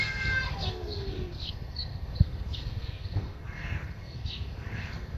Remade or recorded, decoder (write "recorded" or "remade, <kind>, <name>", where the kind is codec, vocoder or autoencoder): remade, codec, SNAC